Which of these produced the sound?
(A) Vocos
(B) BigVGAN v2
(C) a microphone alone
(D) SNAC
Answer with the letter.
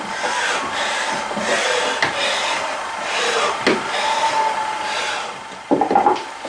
C